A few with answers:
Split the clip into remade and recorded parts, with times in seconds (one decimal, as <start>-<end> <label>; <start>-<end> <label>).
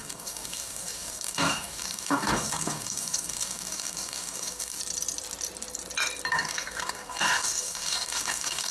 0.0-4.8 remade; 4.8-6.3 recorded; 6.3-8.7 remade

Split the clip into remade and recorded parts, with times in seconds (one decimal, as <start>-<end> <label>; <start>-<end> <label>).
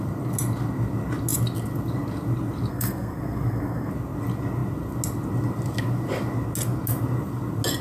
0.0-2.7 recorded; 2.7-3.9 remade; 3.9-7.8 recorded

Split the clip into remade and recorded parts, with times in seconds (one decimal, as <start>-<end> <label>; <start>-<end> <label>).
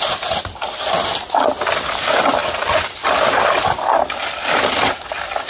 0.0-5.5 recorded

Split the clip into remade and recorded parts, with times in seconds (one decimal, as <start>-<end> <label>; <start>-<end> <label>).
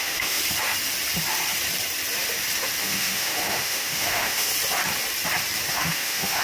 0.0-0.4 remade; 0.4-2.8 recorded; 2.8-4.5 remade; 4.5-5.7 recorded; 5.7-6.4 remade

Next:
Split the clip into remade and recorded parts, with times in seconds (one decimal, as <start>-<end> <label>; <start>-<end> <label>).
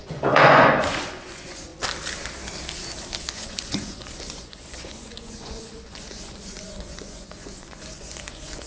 0.0-1.7 remade; 1.7-3.3 recorded; 3.3-8.7 remade